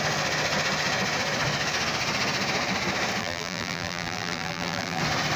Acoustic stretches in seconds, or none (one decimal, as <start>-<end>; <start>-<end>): 0.0-3.2; 5.0-5.4